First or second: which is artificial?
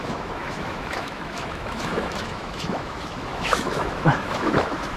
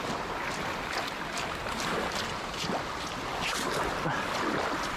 first